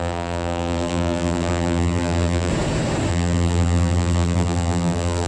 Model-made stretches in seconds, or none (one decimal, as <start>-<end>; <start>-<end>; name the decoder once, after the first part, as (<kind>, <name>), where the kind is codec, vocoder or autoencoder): 0.0-2.5 (vocoder, BigVGAN v2); 3.1-5.3

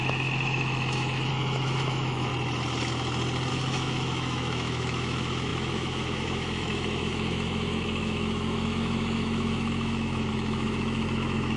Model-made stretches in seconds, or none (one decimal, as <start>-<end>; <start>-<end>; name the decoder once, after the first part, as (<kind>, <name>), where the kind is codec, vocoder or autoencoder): 0.0-2.3 (autoencoder, DAC-VAE); 3.5-11.6

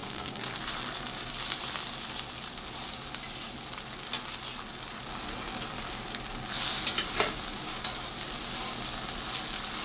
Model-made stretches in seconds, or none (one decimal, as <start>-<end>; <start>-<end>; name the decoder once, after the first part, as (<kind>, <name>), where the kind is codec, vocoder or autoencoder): 0.0-0.6 (codec, SNAC)

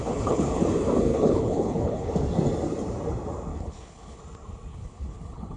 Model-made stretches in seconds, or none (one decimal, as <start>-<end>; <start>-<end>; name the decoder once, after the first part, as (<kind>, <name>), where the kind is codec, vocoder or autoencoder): 0.0-0.6 (codec, HILCodec); 1.1-2.1; 3.5-4.2; 4.7-5.6

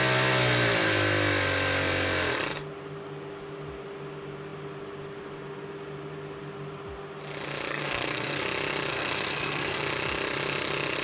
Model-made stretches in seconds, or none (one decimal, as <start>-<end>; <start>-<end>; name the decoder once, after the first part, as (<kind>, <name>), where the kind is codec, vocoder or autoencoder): 7.7-8.4 (codec, SNAC); 8.9-9.8

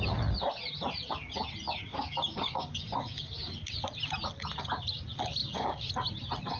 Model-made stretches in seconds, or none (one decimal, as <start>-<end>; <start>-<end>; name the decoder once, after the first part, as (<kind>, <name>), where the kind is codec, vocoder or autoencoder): 1.9-3.5 (codec, DAC); 5.4-5.9